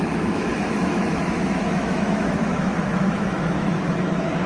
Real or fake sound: fake